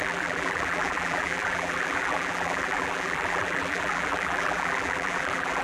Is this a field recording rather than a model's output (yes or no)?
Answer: no